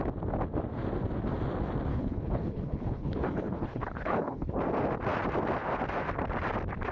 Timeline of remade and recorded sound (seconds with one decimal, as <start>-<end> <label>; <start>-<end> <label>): 0.0-1.9 recorded; 1.9-4.6 remade; 4.6-6.9 recorded